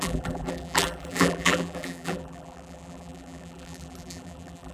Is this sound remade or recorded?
remade